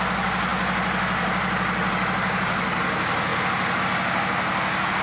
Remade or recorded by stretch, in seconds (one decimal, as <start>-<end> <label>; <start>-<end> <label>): 0.0-5.0 recorded